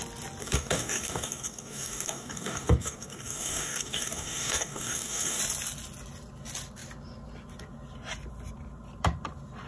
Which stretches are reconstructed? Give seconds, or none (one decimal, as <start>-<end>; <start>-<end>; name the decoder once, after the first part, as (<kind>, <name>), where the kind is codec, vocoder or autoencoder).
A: 0.4-5.4 (codec, DAC)